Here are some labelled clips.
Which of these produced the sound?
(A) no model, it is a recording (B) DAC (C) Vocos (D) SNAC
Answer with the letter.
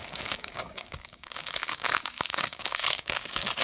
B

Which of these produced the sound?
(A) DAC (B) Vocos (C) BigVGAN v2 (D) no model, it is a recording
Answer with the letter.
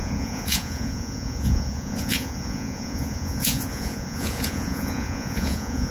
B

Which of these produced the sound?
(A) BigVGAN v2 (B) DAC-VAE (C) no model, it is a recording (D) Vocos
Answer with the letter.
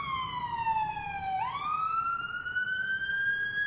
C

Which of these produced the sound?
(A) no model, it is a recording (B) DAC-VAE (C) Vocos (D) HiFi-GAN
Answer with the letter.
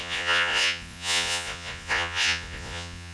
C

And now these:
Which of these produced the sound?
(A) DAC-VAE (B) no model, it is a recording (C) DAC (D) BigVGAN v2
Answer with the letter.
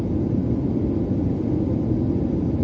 B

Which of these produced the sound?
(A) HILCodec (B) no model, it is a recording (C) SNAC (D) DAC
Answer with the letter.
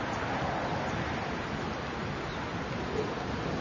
B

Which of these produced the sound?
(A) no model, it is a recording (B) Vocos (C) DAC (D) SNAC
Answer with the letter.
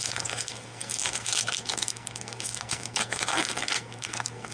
D